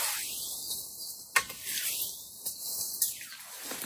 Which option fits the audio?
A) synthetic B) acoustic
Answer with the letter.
B